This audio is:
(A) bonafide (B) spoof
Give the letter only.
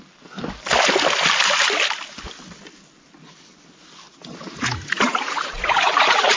A